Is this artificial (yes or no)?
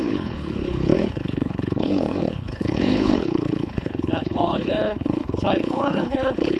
yes